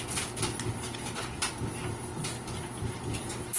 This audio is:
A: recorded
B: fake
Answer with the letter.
A